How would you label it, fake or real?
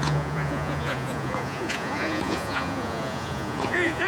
fake